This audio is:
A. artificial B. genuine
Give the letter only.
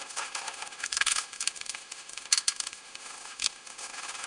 A